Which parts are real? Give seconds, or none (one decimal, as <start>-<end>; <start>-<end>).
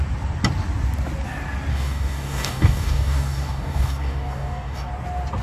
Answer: 0.0-1.7; 4.9-5.4